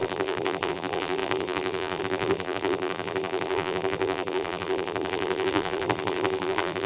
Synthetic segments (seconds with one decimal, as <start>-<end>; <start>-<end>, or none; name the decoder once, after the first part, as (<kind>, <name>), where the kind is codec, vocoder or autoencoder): 0.0-6.9 (vocoder, BigVGAN v2)